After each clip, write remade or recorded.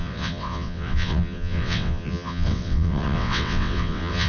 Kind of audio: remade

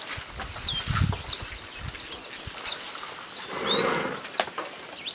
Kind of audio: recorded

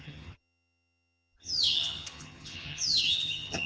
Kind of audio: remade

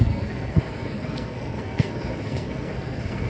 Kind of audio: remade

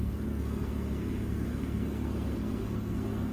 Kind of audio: remade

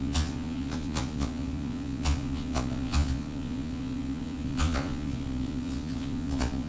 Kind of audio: remade